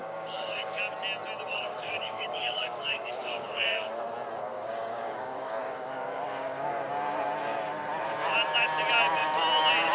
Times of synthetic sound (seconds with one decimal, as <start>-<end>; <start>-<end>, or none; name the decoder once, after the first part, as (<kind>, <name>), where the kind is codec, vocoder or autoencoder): 0.0-0.8 (codec, DAC); 1.5-3.9; 4.5-6.9